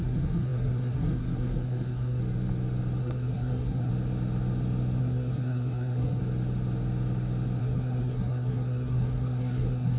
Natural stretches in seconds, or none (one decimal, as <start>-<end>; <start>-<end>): 2.2-3.0; 3.9-5.0; 6.2-7.6